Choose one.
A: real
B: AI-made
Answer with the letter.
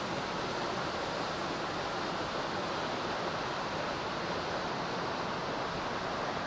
A